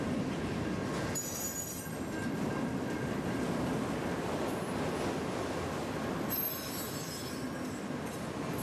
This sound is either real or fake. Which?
real